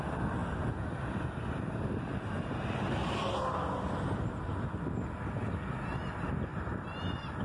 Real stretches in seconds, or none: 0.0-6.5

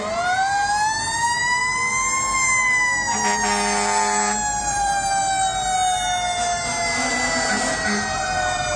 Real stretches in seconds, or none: 1.6-4.6; 5.2-7.1

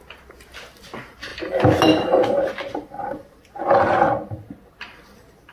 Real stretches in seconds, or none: 0.0-5.5

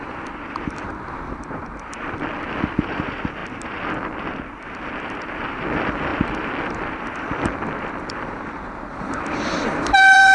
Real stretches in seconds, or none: 3.4-4.9

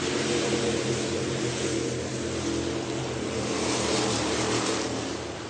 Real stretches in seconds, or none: 2.1-3.0

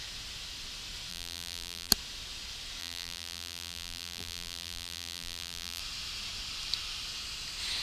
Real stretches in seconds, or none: 0.0-1.1; 1.9-2.8; 5.8-7.8

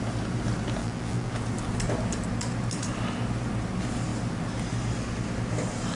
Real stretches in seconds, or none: 0.0-0.8; 1.3-5.9